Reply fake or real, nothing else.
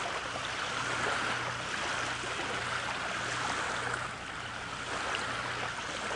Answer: real